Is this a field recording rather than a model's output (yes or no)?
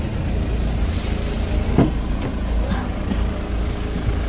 yes